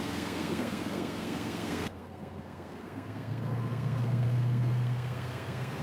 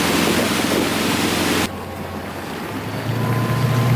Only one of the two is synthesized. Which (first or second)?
first